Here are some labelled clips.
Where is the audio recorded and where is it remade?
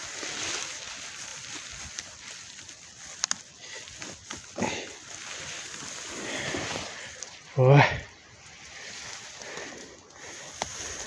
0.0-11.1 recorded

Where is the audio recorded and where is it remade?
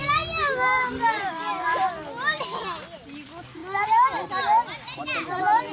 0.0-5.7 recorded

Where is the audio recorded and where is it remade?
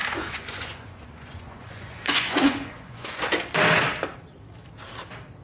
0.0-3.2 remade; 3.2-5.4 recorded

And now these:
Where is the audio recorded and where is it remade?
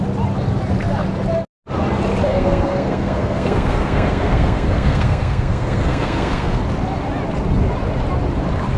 0.0-2.3 recorded; 2.3-6.6 remade; 6.6-8.8 recorded